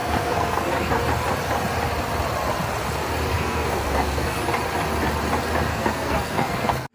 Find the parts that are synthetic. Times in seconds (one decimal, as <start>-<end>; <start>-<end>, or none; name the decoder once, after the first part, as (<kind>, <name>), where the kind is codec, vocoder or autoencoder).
0.0-1.0 (codec, SNAC); 3.3-4.4; 5.7-6.9